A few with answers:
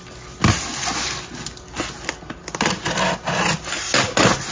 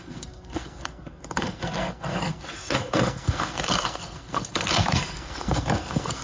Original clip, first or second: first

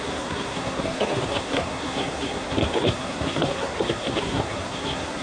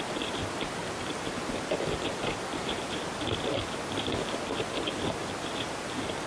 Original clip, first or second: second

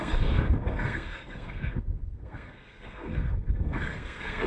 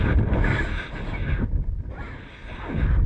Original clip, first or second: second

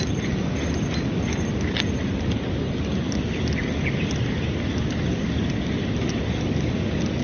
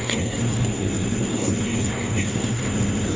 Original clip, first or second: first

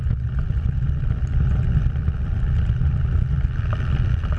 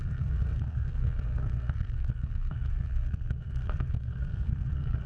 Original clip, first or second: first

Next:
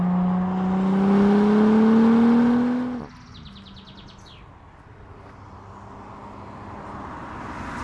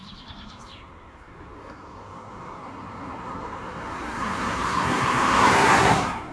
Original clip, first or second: first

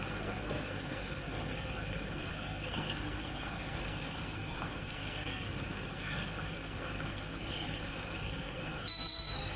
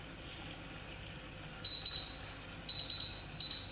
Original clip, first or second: second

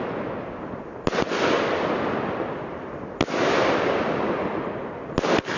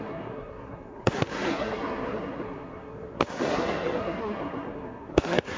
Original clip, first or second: first